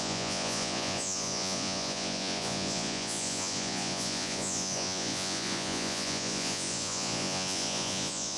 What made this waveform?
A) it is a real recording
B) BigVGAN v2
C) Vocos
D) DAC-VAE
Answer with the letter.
C